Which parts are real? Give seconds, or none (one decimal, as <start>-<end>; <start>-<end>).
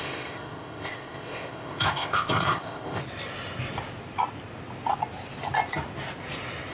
3.0-6.7